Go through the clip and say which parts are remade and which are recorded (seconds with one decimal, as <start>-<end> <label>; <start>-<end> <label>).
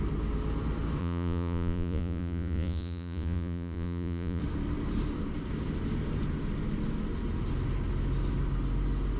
0.0-1.0 recorded; 1.0-4.4 remade; 4.4-9.2 recorded